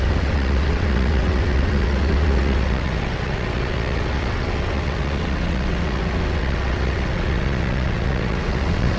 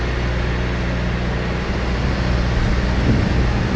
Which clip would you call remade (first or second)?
first